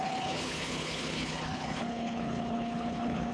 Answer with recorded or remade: remade